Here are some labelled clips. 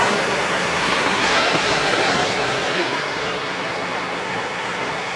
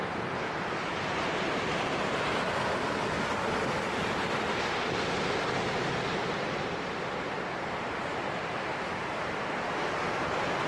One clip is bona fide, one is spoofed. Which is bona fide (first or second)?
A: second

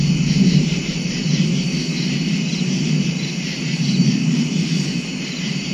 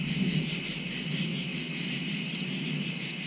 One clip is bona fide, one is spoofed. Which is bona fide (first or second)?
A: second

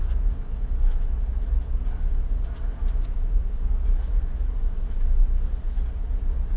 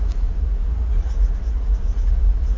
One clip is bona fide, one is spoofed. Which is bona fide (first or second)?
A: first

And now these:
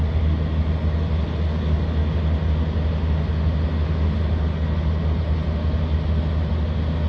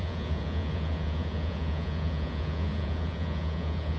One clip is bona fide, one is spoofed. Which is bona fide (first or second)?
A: first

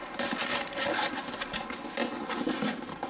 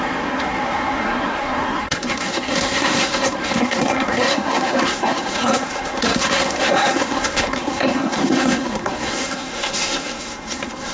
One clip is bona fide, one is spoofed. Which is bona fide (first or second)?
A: first